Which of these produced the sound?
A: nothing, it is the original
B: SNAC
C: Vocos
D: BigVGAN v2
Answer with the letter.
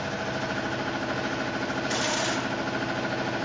A